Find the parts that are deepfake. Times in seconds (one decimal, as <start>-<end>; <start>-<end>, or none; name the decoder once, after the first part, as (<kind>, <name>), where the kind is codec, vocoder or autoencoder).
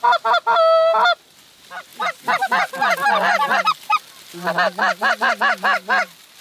1.9-2.5 (vocoder, BigVGAN v2)